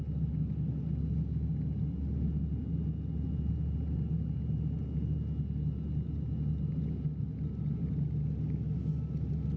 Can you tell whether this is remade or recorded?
recorded